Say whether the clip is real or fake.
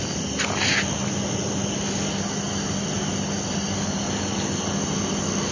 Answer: real